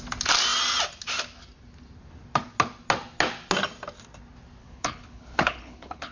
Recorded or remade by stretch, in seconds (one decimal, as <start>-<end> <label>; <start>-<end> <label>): 0.0-4.6 recorded; 4.6-6.1 remade